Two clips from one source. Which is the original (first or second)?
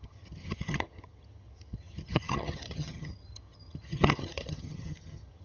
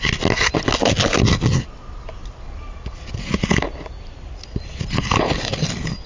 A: second